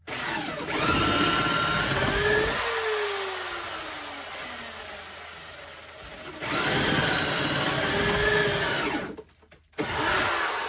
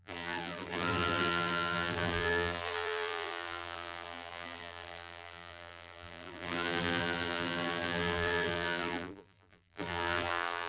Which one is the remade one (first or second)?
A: second